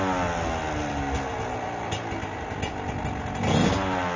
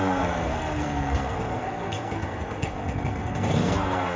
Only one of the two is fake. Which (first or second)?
second